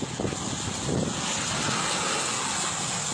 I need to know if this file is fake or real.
real